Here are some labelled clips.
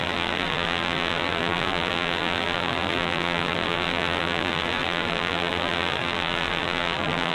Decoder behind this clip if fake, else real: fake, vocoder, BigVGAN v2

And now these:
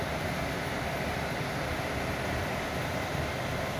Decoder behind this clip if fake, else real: real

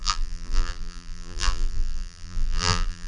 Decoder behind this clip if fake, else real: fake, vocoder, BigVGAN v2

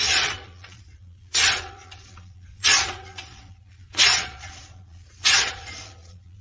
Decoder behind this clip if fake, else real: fake, vocoder, Vocos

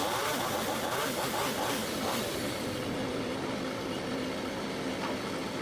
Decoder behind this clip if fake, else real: real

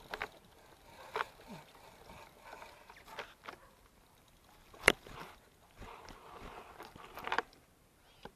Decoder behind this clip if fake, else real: real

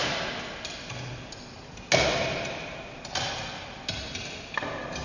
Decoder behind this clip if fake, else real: real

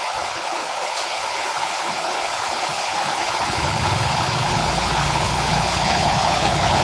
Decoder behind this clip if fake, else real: fake, codec, HILCodec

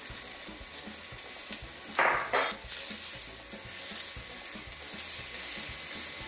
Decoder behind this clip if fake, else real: real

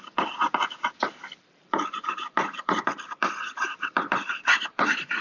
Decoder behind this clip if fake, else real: fake, vocoder, BigVGAN v2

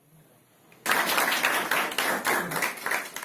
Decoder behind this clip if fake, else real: real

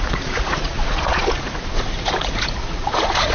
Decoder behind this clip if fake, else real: fake, vocoder, Vocos